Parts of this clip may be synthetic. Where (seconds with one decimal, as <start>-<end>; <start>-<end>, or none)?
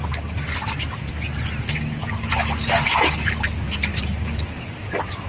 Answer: 2.0-3.3; 3.9-5.3